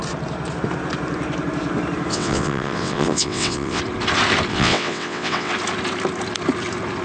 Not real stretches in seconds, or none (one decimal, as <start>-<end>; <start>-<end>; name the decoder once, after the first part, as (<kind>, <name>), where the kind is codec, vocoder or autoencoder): 2.1-3.8 (vocoder, WaveNeXt); 4.5-5.5